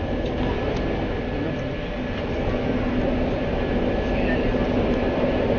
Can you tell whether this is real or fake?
real